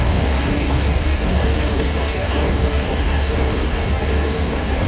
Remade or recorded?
remade